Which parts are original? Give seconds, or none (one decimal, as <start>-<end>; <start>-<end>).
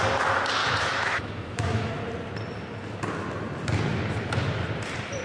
0.0-0.6; 1.9-5.2